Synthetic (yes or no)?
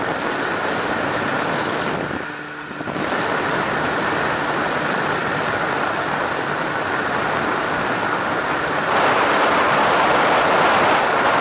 no